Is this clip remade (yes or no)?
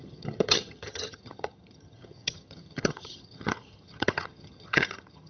yes